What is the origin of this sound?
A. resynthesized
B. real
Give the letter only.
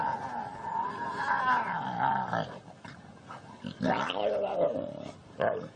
B